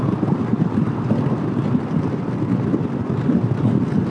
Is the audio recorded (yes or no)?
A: yes